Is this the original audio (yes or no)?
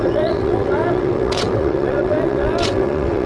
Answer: no